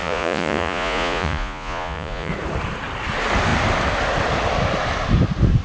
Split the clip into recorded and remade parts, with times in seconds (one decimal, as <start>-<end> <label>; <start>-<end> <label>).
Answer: 0.0-2.3 remade; 2.3-5.6 recorded